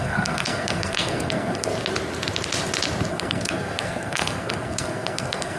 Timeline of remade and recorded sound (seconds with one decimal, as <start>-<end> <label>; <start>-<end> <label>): 0.0-1.7 remade; 1.7-3.1 recorded; 3.1-5.6 remade